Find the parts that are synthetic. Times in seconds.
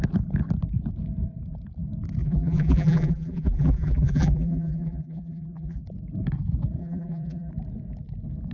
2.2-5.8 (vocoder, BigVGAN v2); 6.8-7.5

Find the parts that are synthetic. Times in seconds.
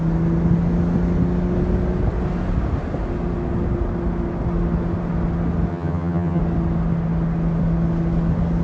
5.7-6.4 (vocoder, HiFi-GAN)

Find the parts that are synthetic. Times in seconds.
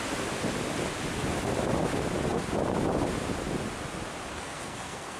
4.3-5.2 (codec, SNAC)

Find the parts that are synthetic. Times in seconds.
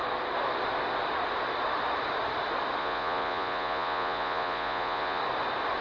2.8-5.2 (vocoder, Vocos)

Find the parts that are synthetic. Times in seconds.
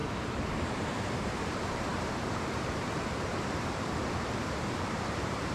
0.6-5.5 (vocoder, BigVGAN v2)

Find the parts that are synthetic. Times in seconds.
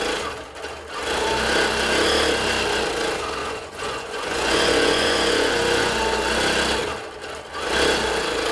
3.4-6.0 (vocoder, Vocos)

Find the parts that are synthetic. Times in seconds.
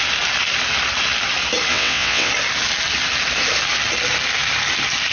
1.7-2.3 (vocoder, WaveNeXt)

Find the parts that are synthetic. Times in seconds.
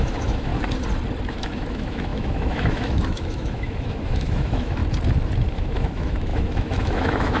0.0-0.5 (autoencoder, DAC-VAE); 1.3-4.8; 5.5-7.4